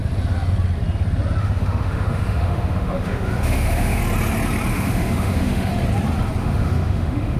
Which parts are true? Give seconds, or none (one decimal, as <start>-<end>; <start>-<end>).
0.0-1.4; 4.0-4.7; 5.7-6.4